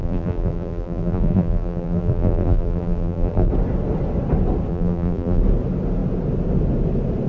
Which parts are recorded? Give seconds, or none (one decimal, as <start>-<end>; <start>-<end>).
3.5-4.7; 5.4-7.3